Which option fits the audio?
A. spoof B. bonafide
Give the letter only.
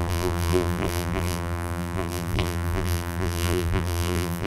A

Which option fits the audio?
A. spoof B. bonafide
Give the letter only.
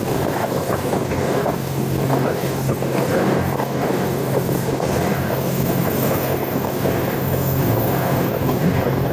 A